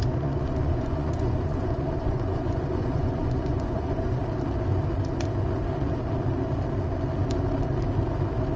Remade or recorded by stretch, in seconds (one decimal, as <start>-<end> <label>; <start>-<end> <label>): 0.0-4.2 remade; 4.2-8.6 recorded